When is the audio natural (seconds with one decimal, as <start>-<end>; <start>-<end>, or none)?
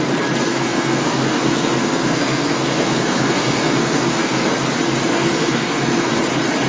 0.0-0.5; 4.5-5.1; 6.1-6.7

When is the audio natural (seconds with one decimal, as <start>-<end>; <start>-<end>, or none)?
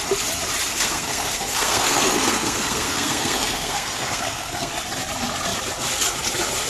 0.0-0.7; 4.7-6.7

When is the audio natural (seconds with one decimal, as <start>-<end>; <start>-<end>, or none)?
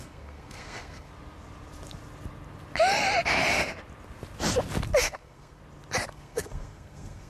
1.1-5.0; 5.6-6.1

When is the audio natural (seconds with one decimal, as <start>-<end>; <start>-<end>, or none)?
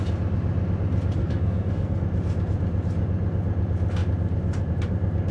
0.0-1.2; 2.0-5.3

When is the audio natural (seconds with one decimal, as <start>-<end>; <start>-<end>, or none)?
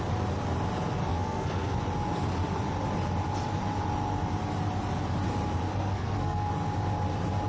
0.0-1.1; 1.8-5.7; 6.5-7.5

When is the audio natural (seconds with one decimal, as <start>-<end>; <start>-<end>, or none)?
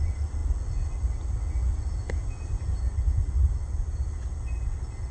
0.0-5.1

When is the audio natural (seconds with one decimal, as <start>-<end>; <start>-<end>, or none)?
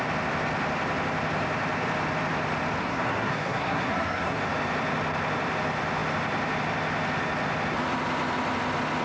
0.0-2.8; 4.4-9.0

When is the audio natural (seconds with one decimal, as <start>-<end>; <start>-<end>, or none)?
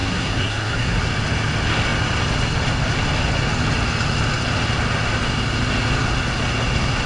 1.0-7.1